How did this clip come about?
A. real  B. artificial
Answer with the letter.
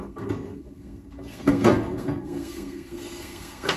B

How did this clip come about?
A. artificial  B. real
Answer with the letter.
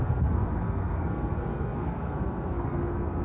A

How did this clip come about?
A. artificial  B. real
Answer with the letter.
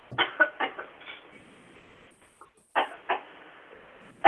B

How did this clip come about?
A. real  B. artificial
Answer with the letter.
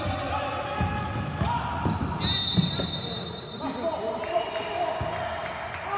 A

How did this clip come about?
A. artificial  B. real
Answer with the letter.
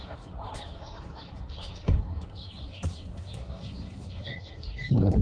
A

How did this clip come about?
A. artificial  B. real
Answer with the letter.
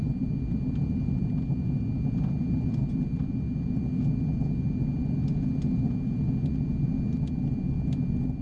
B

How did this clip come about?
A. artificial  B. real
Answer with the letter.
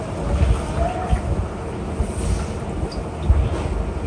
B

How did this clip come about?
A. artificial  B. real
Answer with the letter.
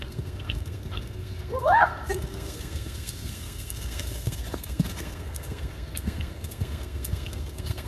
A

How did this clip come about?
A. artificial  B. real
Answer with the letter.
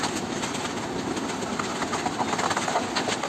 B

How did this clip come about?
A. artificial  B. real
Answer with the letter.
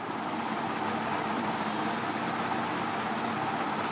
B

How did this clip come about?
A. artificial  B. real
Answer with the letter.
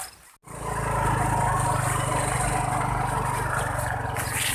B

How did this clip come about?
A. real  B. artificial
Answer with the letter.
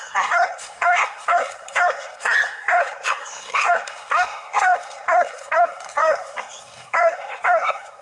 B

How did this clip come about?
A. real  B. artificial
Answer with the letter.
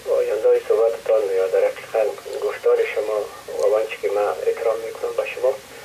A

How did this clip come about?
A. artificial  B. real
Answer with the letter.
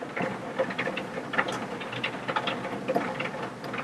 B